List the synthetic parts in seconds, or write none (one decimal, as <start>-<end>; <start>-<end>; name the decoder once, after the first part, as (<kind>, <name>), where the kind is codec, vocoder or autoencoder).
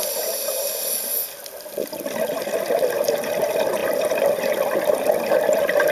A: none